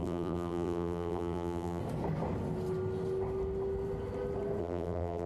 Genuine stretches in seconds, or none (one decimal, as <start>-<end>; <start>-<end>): 1.8-4.6